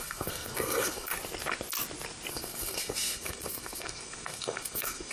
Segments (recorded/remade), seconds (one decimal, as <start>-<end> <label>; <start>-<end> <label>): 0.0-1.1 remade; 1.1-2.3 recorded; 2.3-5.1 remade